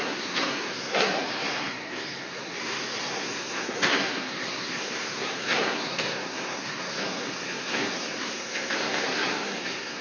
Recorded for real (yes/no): no